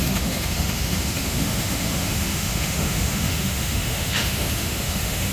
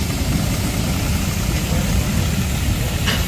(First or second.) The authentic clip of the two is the second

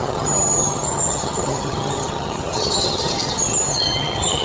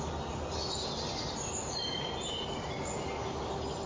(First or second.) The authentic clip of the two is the second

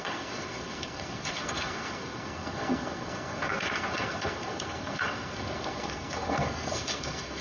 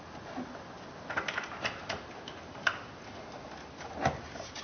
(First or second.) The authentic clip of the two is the second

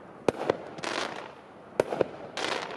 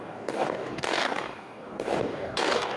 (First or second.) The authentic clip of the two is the first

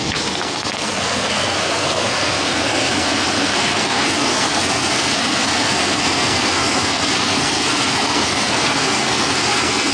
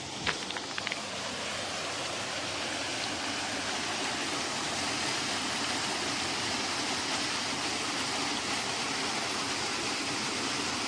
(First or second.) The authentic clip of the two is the second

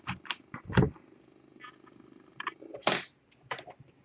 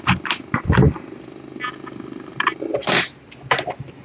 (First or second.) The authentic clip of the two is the second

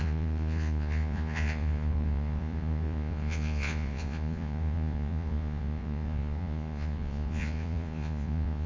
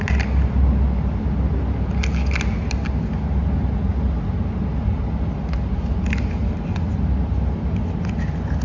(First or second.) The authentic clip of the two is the second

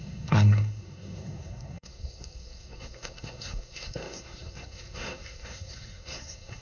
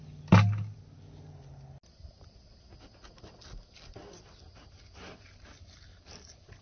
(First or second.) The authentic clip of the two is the second